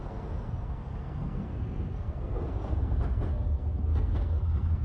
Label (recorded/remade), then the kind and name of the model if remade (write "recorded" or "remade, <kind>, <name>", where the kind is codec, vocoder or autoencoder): remade, codec, SNAC